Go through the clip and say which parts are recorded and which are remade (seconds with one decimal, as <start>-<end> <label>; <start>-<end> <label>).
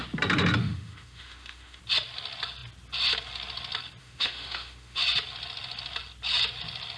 0.0-0.6 recorded; 0.6-1.8 remade; 1.8-4.0 recorded; 4.0-5.0 remade; 5.0-7.0 recorded